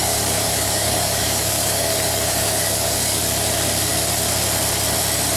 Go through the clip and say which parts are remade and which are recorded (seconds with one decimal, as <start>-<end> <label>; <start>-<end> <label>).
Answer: 0.0-3.2 remade; 3.2-5.4 recorded